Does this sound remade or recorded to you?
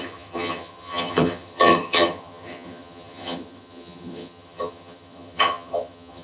remade